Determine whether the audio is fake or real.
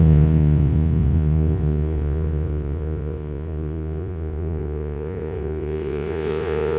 fake